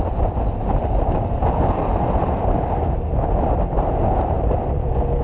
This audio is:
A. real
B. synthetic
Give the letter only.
A